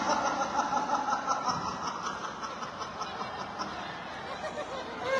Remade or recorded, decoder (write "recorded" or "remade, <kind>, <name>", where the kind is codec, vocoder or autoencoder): recorded